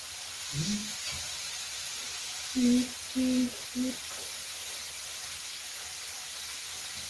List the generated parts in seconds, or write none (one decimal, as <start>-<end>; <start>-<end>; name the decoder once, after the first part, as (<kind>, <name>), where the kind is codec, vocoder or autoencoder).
none